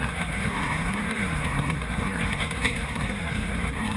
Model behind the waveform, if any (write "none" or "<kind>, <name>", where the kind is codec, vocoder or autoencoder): codec, SNAC